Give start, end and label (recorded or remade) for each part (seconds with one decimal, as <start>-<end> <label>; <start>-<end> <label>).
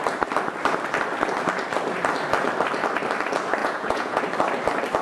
0.0-3.6 recorded; 3.6-4.2 remade; 4.2-5.0 recorded